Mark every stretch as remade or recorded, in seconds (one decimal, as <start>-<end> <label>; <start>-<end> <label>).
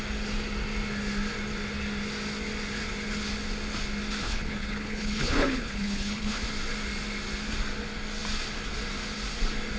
0.0-4.2 recorded; 4.2-6.4 remade; 6.4-9.8 recorded